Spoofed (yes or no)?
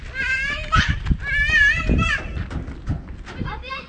no